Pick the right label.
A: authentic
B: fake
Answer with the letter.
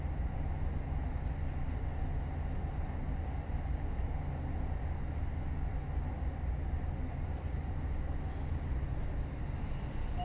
A